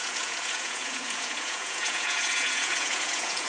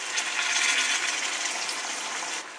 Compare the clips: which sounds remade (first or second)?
first